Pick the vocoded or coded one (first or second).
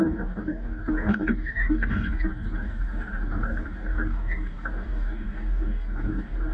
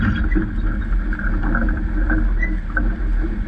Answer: first